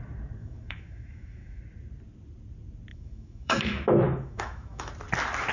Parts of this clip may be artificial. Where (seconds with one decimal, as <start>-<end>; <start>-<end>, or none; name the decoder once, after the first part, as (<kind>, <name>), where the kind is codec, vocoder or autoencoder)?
0.4-1.6 (autoencoder, DAC-VAE); 2.9-4.9

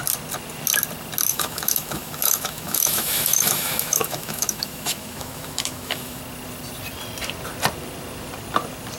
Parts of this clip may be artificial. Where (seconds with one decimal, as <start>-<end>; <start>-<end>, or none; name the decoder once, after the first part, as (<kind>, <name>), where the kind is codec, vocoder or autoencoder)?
1.3-6.2 (autoencoder, DAC-VAE)